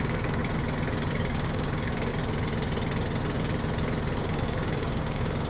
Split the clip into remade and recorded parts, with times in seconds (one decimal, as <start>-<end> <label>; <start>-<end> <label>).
0.0-0.4 remade; 0.4-1.1 recorded; 1.1-2.1 remade; 2.1-4.2 recorded; 4.2-5.5 remade